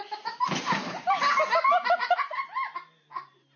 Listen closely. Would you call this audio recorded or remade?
recorded